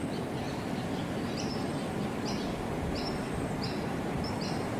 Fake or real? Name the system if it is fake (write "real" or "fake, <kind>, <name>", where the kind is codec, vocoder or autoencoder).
real